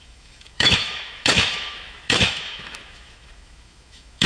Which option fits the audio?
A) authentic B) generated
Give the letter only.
B